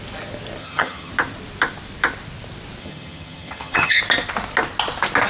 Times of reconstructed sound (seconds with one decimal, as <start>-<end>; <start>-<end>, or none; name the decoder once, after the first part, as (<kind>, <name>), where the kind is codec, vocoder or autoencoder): 0.6-1.1 (vocoder, HiFi-GAN); 2.8-4.0